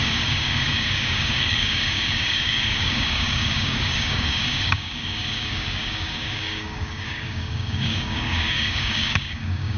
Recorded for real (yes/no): no